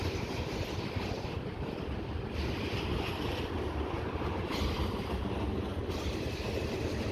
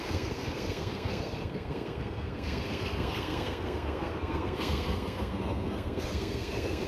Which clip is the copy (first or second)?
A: second